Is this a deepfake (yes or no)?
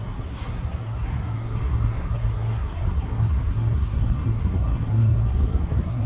yes